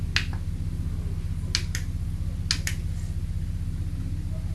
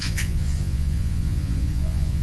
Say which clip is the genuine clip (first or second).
first